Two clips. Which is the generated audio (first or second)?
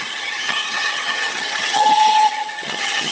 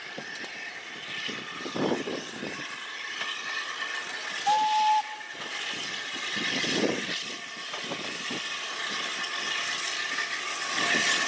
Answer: first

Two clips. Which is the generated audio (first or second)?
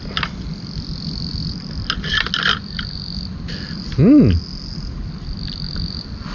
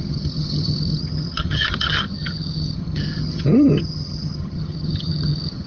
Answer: second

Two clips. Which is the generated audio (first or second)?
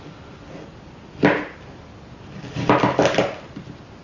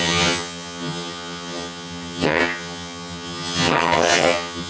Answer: second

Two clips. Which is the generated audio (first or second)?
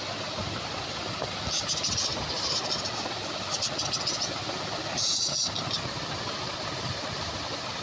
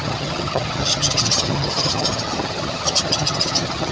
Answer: second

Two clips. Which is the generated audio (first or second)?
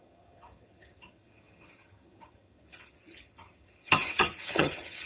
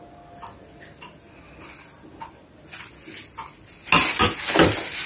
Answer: first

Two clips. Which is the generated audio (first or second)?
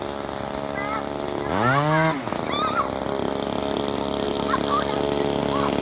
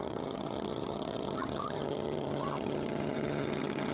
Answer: second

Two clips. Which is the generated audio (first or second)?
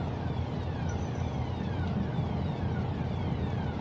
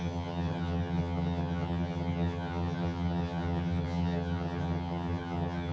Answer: second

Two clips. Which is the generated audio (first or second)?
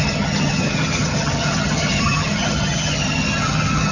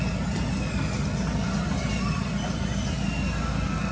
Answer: first